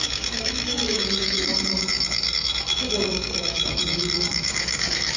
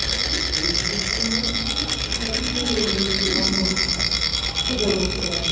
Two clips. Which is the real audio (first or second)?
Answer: second